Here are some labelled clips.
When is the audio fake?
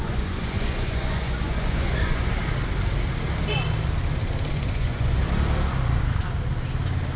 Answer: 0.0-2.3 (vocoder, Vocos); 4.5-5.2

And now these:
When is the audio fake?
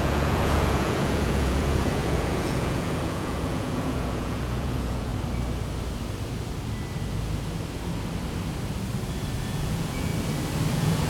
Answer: 0.0-5.1 (vocoder, Vocos); 9.5-10.1; 10.7-11.1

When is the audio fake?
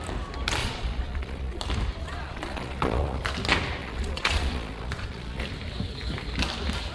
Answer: 0.6-1.6 (vocoder, Vocos); 2.0-3.2; 3.8-5.5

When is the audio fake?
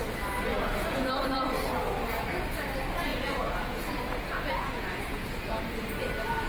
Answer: 0.5-1.4 (vocoder, Vocos); 3.1-5.6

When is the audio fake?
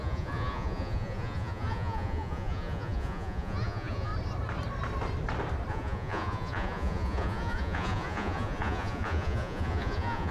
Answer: 0.0-4.1 (vocoder, Vocos); 5.7-10.3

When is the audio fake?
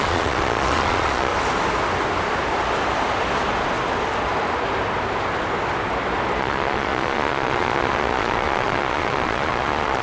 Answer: 0.0-1.3 (vocoder, Vocos); 6.4-10.0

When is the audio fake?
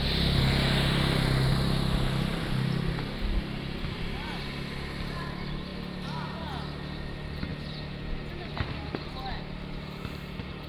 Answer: none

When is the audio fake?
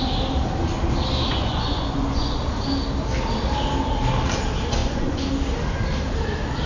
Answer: 1.3-2.4 (vocoder, Vocos); 4.8-5.3